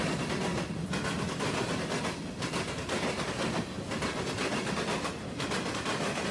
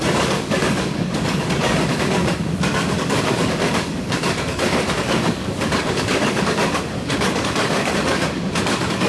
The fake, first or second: second